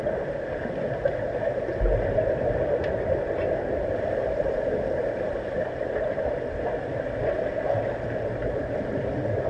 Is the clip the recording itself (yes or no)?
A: yes